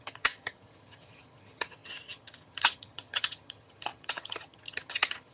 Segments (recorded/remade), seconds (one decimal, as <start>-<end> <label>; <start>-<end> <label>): 0.0-5.3 remade